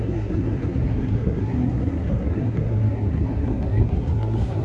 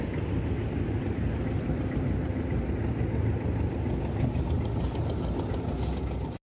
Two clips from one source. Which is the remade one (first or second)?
first